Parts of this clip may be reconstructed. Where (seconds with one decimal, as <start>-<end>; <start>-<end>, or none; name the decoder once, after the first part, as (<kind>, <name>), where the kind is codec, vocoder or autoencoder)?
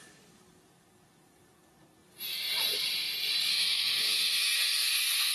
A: 3.5-5.3 (autoencoder, DAC-VAE)